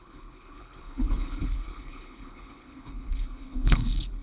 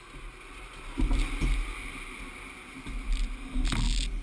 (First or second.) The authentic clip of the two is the second